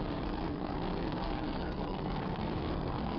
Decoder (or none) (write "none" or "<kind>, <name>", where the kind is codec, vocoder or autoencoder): codec, SNAC